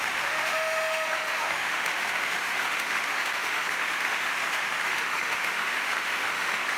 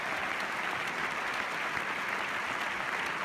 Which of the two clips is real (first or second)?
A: second